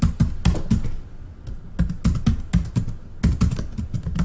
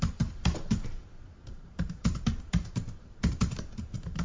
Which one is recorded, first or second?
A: first